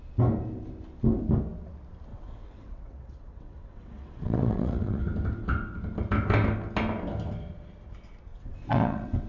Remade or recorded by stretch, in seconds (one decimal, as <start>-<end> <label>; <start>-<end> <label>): 0.0-2.1 recorded; 2.1-5.0 remade; 5.0-8.3 recorded; 8.3-9.3 remade